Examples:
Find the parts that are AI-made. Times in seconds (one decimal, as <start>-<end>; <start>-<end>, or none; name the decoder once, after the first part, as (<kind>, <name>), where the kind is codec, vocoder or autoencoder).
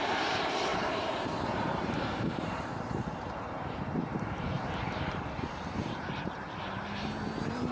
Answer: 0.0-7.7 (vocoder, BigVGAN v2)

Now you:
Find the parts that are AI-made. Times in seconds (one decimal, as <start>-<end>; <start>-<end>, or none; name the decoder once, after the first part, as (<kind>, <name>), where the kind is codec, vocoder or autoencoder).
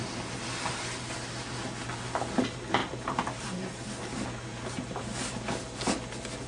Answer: 2.8-3.9 (vocoder, BigVGAN v2); 4.5-5.4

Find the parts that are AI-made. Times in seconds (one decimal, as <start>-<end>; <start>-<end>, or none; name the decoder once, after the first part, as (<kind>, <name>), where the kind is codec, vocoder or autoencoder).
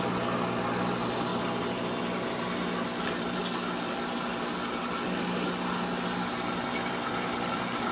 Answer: 1.3-2.0 (vocoder, BigVGAN v2)